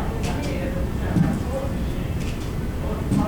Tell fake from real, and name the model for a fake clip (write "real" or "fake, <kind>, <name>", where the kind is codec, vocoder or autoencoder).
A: real